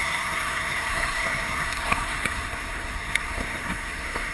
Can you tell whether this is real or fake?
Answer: fake